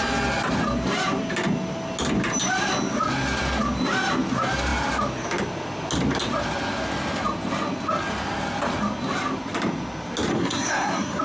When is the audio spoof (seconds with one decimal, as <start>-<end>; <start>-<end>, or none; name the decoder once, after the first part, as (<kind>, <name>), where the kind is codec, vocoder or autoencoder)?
10.3-11.2 (codec, SNAC)